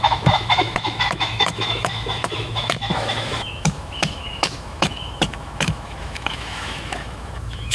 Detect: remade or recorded remade